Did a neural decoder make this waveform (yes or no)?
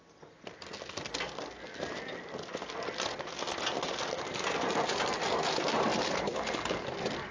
no